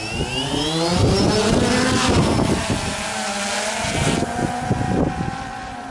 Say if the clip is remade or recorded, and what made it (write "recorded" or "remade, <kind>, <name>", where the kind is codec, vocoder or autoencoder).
recorded